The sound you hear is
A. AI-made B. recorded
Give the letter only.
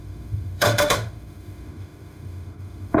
A